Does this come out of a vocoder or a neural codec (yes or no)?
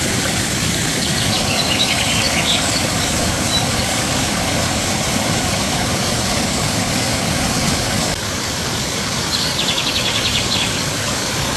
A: yes